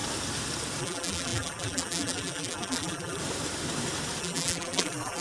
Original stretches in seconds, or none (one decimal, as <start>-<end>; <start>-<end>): 0.0-0.8; 3.2-4.2